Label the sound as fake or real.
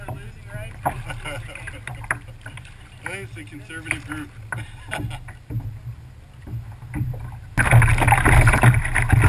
real